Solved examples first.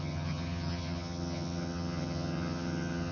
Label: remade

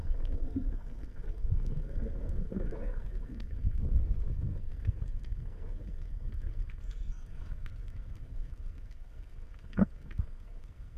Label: remade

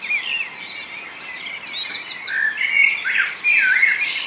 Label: recorded